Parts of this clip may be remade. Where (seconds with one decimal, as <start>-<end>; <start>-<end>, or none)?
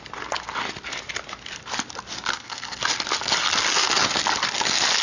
2.3-2.8